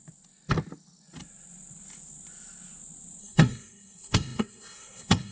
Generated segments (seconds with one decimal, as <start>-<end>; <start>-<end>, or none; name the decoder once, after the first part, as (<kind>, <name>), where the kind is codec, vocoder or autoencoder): 3.2-5.3 (codec, SNAC)